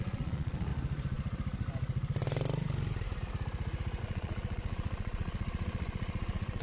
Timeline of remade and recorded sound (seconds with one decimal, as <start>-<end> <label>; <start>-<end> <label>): 0.0-0.7 remade; 0.7-4.0 recorded; 4.0-6.6 remade